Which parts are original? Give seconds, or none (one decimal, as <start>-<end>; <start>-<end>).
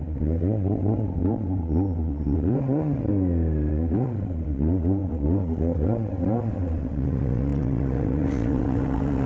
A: 3.1-3.7